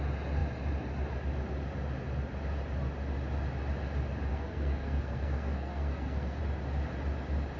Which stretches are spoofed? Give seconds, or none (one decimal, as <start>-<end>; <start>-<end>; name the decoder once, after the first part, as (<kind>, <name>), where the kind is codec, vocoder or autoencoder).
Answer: 4.3-6.4 (codec, SNAC)